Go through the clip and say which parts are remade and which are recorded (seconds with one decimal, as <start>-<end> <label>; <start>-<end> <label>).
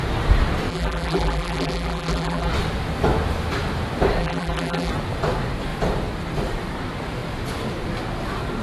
0.0-0.7 recorded; 0.7-2.5 remade; 2.5-4.2 recorded; 4.2-4.9 remade; 4.9-8.6 recorded